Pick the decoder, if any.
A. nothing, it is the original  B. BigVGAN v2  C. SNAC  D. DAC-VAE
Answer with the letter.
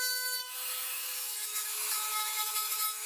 D